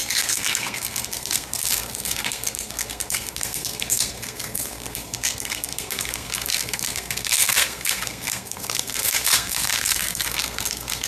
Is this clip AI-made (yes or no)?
yes